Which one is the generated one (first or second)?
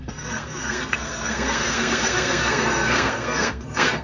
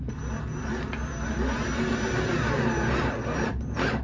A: first